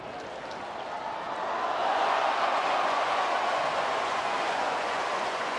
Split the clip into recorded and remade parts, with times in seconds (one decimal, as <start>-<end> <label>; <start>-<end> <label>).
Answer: 0.0-1.8 recorded; 1.8-5.6 remade